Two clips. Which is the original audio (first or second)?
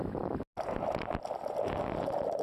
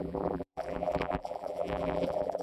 first